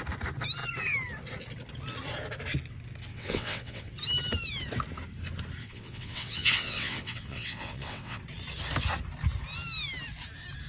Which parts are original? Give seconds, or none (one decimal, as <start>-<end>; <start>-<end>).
0.0-3.1; 3.9-5.6; 8.2-10.7